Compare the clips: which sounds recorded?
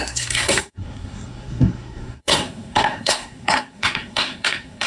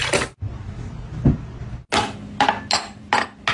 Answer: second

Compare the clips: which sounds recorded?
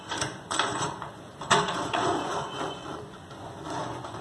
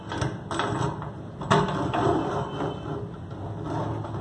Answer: second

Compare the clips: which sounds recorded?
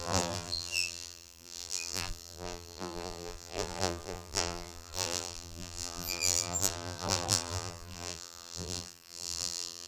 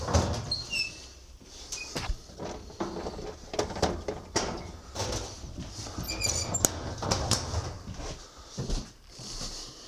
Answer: second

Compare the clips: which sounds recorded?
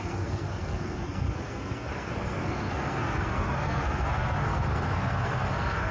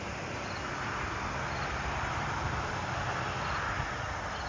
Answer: second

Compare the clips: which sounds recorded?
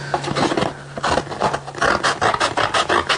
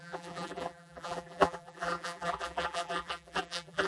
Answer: first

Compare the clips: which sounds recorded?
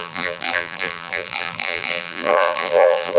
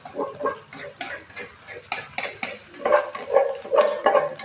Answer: second